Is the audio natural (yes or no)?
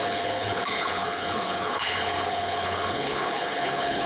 no